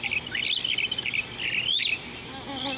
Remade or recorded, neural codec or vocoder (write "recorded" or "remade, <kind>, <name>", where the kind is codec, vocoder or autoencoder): recorded